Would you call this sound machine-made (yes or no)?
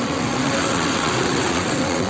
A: yes